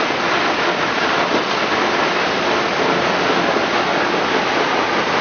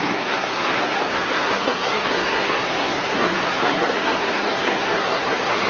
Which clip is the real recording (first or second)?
first